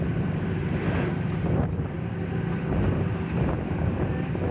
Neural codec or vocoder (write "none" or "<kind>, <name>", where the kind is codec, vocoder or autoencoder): none